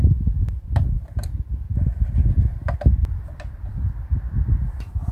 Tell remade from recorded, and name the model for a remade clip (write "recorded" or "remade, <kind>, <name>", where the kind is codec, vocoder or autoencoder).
recorded